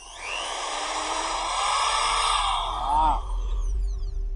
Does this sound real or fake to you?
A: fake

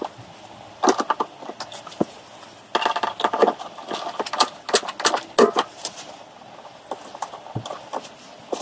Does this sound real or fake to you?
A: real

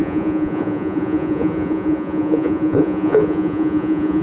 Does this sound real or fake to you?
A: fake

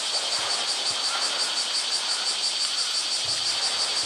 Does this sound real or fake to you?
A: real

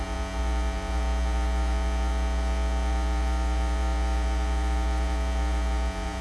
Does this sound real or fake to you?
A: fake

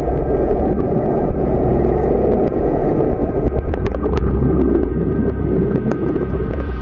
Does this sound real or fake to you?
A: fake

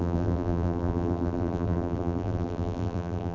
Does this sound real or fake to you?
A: fake